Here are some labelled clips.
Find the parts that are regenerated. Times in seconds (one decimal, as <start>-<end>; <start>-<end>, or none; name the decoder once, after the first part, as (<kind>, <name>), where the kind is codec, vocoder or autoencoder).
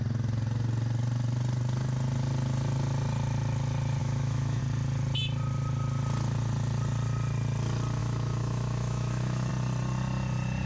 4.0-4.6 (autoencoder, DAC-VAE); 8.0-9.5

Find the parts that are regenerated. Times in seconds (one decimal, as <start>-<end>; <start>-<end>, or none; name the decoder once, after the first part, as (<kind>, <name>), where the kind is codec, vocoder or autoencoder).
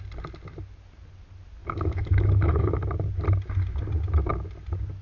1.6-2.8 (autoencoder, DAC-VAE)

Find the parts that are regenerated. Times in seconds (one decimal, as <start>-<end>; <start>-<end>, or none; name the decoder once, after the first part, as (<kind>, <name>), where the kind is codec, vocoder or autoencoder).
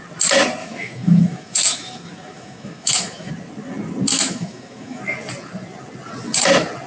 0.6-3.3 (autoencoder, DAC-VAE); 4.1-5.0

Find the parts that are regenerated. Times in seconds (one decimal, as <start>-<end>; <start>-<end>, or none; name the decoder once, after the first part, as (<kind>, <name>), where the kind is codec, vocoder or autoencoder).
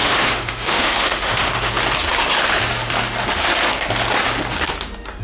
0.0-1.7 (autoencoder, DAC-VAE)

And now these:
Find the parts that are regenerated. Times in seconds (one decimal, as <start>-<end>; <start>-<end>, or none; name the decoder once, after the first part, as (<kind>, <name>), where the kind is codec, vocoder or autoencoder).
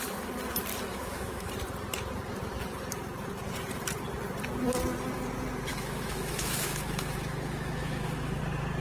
0.9-1.5 (autoencoder, DAC-VAE); 5.7-8.4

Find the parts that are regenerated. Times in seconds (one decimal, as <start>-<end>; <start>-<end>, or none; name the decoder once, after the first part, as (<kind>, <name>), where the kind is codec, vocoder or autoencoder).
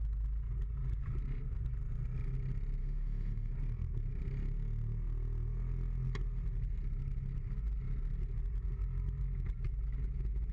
2.8-3.5 (autoencoder, DAC-VAE)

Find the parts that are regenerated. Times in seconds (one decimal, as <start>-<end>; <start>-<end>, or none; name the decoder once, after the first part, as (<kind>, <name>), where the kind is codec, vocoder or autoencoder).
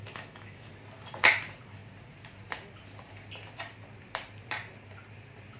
0.0-0.7 (autoencoder, DAC-VAE)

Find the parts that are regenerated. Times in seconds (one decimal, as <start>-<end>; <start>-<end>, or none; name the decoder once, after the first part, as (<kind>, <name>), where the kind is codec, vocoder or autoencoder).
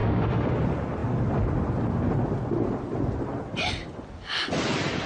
0.0-0.5 (autoencoder, DAC-VAE)